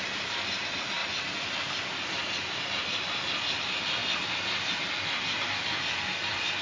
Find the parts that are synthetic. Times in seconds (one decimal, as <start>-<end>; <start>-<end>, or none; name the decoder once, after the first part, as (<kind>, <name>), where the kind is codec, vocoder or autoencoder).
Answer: none